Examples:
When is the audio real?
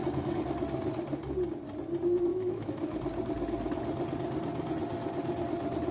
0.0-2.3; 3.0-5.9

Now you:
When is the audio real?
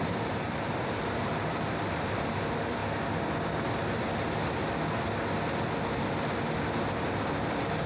2.8-7.5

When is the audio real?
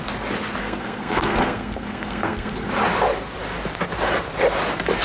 0.0-0.6; 2.7-5.0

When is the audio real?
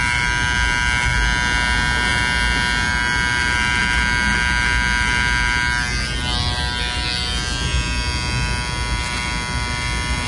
0.0-10.3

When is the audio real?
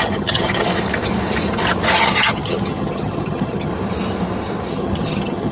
0.7-2.0; 3.7-4.7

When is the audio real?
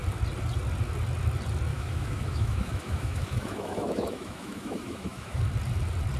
0.0-1.7; 5.4-6.2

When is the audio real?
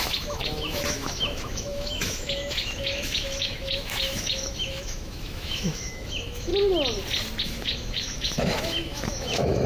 6.5-7.4